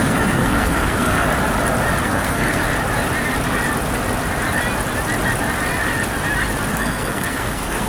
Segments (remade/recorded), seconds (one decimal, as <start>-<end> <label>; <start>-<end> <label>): 0.0-1.3 remade; 1.3-2.0 recorded; 2.0-2.7 remade; 2.7-6.7 recorded; 6.7-7.9 remade

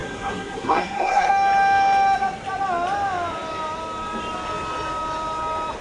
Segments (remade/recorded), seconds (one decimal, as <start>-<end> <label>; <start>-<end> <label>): 0.0-1.3 remade; 1.3-5.8 recorded

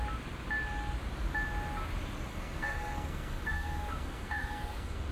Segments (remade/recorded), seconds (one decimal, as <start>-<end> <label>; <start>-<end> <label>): 0.0-2.3 recorded; 2.3-5.1 remade

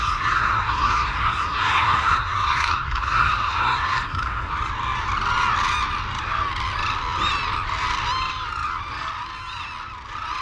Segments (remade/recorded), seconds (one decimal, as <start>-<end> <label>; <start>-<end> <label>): 0.0-4.5 remade; 4.5-10.4 recorded

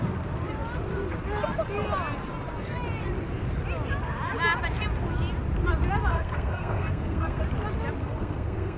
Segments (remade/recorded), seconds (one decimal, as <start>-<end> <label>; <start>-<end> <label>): 0.0-6.1 recorded; 6.1-7.4 remade; 7.4-8.0 recorded; 8.0-8.8 remade

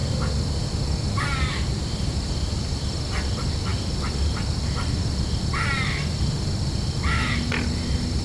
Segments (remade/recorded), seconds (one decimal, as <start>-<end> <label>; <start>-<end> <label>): 0.0-8.2 recorded

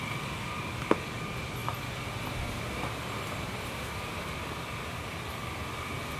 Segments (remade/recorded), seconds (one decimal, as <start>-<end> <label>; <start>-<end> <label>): 0.0-6.2 recorded

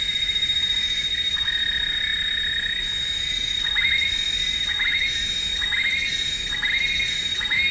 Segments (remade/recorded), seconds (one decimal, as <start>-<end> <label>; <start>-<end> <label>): 0.0-7.7 recorded